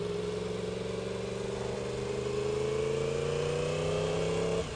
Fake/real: real